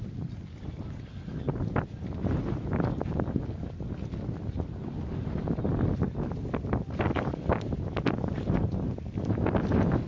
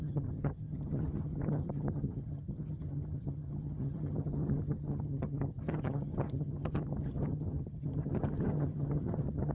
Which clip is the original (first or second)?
first